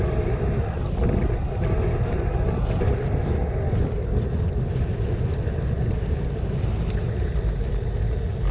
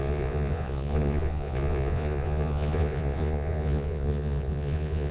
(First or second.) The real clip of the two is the first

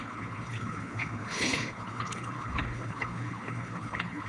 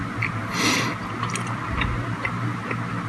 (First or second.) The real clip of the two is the second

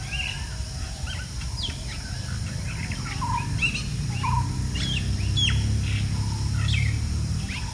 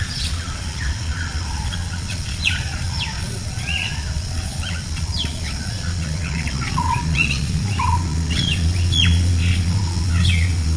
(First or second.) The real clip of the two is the first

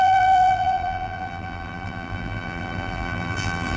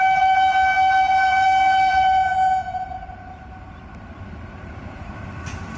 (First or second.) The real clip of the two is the second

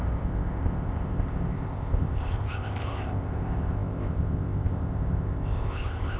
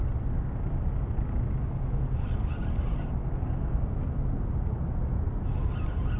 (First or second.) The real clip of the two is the second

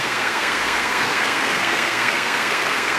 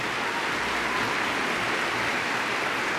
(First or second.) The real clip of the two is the second